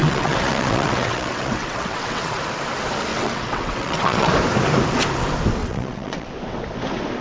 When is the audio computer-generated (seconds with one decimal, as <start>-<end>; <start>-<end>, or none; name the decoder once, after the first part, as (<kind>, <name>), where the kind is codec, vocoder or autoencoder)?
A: 0.0-2.4 (vocoder, WaveNeXt); 3.1-4.3; 5.6-6.3